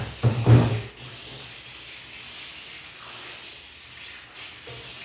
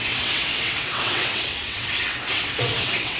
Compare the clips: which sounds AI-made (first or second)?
second